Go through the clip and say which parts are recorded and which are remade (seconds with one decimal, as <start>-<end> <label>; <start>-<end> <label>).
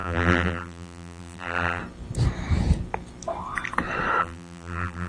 0.0-1.8 remade; 1.8-4.2 recorded; 4.2-5.1 remade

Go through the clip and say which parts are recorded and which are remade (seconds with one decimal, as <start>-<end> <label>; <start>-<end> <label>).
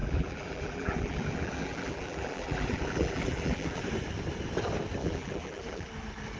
0.0-3.8 remade; 3.8-5.0 recorded; 5.0-5.9 remade; 5.9-6.4 recorded